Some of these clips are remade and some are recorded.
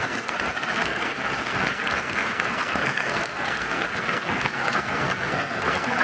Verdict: remade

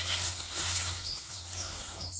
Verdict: remade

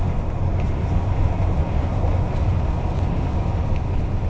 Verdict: recorded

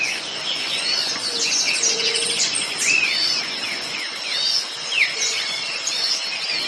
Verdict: remade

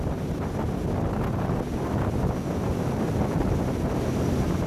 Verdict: recorded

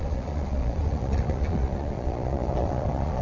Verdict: remade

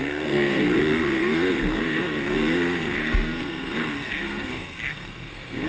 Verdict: remade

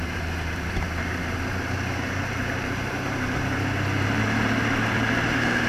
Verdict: remade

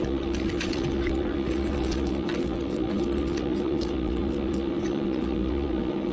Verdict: remade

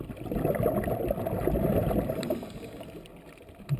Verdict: recorded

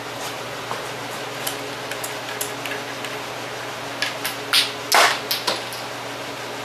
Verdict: recorded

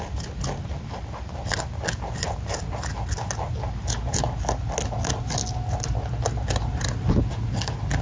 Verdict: recorded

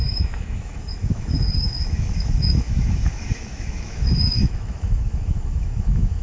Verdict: remade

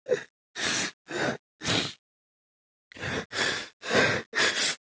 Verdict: recorded